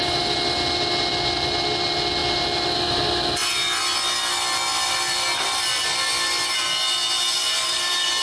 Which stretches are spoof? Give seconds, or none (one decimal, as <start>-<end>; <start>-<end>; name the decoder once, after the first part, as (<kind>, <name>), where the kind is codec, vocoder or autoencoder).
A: none